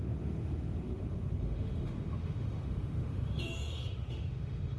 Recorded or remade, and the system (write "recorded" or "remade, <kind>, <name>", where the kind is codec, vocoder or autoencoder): remade, autoencoder, DAC-VAE